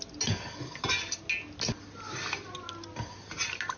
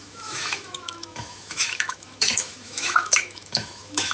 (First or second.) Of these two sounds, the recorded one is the first